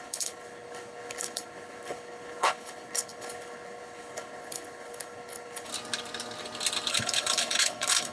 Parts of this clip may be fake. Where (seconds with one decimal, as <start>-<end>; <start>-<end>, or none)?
0.0-5.7; 6.9-8.1